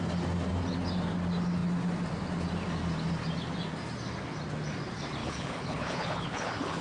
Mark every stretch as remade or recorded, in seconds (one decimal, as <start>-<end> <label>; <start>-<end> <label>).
0.0-5.2 recorded; 5.2-6.8 remade